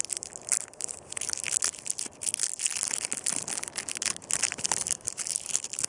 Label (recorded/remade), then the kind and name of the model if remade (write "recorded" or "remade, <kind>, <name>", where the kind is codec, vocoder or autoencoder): recorded